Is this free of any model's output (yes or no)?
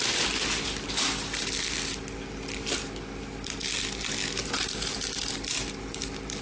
yes